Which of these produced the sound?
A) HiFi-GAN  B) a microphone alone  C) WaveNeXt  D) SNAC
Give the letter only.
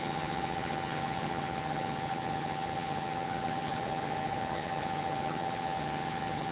A